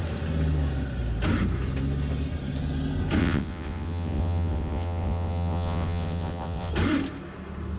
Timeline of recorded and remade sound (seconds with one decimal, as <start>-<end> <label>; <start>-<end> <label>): 0.0-3.2 recorded; 3.2-6.7 remade; 6.7-7.8 recorded